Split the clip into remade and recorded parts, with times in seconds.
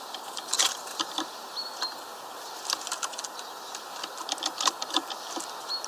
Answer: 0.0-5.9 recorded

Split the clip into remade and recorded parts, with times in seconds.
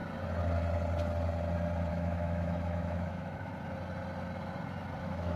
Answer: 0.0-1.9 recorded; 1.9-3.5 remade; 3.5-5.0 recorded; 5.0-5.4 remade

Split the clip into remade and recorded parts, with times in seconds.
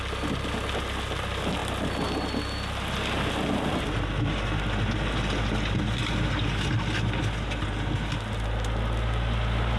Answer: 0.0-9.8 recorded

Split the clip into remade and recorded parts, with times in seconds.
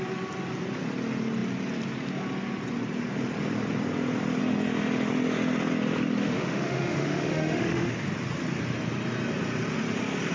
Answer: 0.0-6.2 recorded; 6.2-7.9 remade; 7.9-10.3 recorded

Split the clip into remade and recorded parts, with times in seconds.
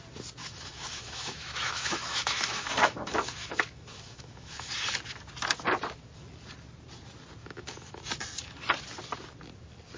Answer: 0.0-0.4 recorded; 0.4-4.7 remade; 4.7-7.4 recorded; 7.4-8.0 remade; 8.0-10.0 recorded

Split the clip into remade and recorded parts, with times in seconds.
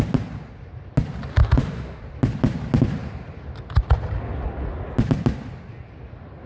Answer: 0.0-1.3 recorded; 1.3-2.0 remade; 2.0-6.5 recorded